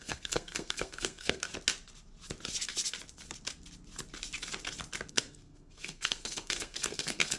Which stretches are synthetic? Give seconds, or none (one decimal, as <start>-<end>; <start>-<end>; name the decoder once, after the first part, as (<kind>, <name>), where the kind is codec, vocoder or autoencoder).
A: 0.0-1.5 (codec, SNAC); 5.1-7.4